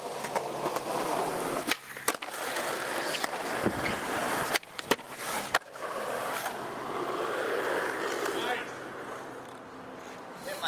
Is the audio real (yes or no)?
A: yes